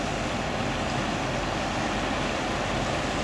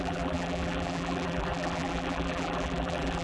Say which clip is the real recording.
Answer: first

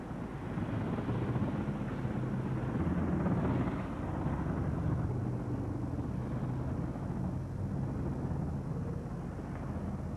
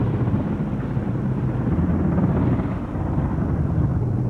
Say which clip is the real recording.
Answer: first